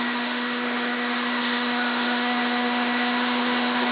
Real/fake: fake